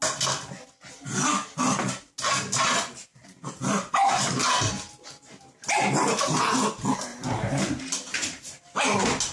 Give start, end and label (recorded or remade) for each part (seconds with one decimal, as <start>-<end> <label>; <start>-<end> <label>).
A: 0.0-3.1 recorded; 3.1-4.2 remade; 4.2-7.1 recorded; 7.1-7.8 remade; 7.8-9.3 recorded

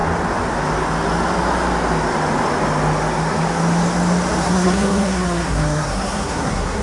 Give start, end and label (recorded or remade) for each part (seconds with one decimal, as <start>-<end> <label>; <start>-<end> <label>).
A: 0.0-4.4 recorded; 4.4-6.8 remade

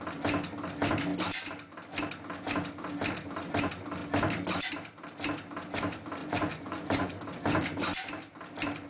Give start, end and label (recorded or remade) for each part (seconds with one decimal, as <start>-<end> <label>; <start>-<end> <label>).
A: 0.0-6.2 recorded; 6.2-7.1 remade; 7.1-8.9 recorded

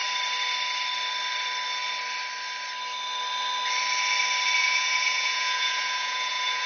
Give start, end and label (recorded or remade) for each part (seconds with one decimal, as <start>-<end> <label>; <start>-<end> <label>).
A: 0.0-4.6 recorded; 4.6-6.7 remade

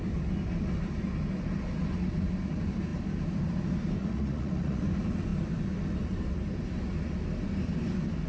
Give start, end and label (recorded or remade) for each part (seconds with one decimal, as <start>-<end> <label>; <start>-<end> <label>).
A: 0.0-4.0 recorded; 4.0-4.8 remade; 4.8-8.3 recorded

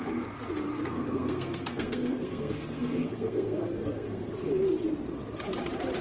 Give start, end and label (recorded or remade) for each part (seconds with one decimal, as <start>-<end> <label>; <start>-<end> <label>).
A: 0.0-0.7 recorded; 0.7-4.3 remade; 4.3-6.0 recorded

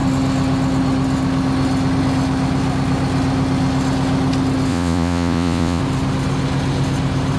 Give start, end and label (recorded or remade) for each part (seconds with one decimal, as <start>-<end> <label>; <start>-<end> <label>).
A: 0.0-4.7 recorded; 4.7-5.8 remade; 5.8-7.4 recorded